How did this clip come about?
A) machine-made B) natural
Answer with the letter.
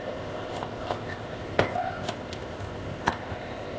A